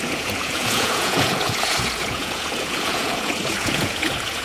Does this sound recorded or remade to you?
remade